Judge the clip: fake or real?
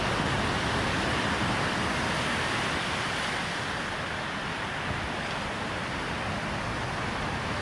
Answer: real